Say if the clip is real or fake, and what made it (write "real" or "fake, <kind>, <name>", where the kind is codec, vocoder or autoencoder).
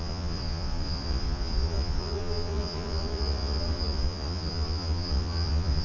fake, vocoder, Vocos